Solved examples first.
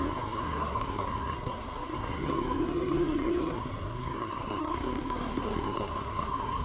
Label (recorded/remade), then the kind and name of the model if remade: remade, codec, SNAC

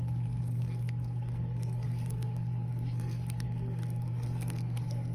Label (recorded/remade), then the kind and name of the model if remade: remade, codec, SNAC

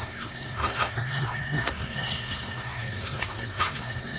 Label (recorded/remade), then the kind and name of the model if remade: remade, codec, SNAC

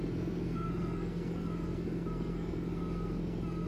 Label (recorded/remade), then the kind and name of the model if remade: remade, codec, SNAC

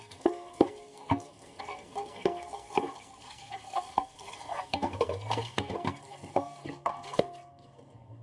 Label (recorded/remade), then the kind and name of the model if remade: remade, codec, SNAC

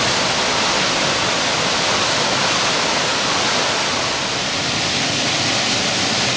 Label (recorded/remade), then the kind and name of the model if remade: recorded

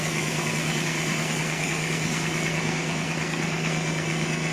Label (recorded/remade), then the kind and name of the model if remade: remade, codec, SNAC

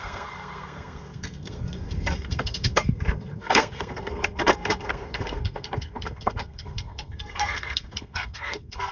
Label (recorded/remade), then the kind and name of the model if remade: remade, codec, SNAC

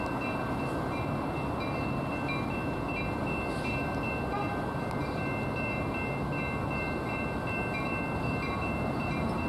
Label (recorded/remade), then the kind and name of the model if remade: recorded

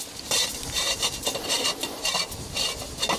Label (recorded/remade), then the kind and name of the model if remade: recorded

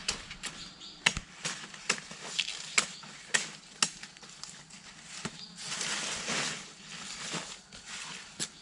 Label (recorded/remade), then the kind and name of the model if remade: recorded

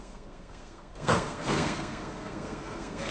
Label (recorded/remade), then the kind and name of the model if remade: remade, codec, SNAC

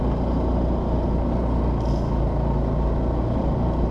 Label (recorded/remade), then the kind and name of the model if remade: recorded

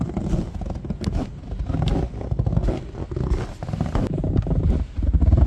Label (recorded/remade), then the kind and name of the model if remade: recorded